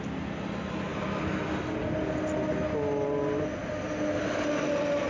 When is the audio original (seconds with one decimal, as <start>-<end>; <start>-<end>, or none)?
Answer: 0.0-5.1